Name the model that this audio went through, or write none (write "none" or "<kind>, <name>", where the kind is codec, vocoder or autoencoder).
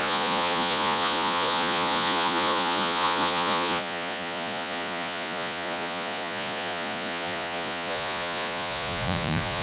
vocoder, Vocos